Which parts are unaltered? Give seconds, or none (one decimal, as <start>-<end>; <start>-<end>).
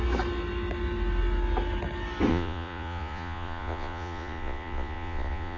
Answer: 0.0-2.3